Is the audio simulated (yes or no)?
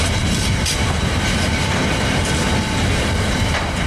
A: yes